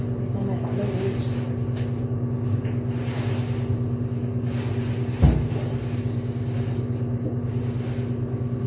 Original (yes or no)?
yes